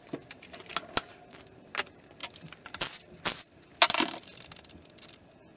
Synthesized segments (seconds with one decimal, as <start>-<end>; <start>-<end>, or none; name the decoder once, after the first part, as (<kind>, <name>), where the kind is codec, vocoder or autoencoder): none